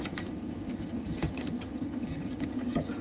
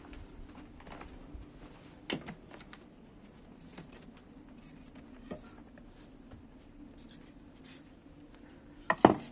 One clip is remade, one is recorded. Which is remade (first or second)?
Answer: first